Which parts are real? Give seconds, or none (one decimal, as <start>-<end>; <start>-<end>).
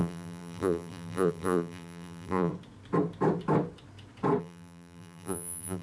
2.5-4.4